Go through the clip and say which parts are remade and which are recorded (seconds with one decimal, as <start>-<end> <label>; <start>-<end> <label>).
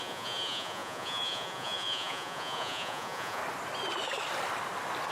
0.0-3.4 remade; 3.4-5.1 recorded